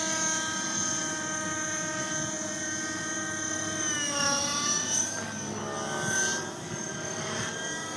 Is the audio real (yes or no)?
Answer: yes